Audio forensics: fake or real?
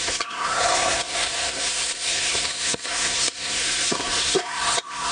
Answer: fake